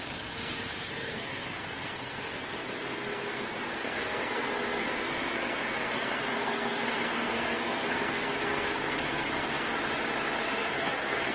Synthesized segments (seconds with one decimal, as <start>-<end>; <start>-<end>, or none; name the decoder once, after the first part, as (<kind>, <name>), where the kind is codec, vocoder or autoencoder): 0.0-9.7 (codec, SNAC); 10.4-11.3